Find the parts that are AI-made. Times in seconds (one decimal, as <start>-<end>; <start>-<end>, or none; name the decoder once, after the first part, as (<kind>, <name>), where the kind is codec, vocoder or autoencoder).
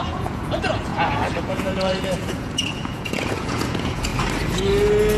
0.0-4.1 (vocoder, Vocos)